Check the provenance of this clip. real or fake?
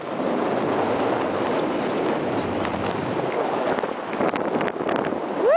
real